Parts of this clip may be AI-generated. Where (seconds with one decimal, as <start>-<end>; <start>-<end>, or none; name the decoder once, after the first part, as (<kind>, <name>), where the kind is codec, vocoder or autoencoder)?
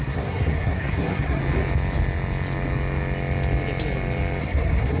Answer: 0.0-1.4 (codec, SNAC); 4.4-5.0